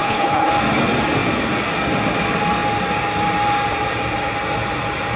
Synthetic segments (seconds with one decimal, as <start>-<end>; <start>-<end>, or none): 0.0-0.5